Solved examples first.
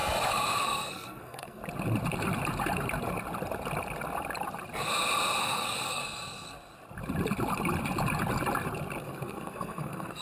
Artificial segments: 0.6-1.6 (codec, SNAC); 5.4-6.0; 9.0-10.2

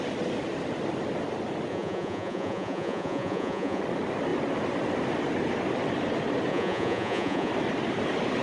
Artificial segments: 1.7-3.8 (vocoder, Vocos); 6.5-7.5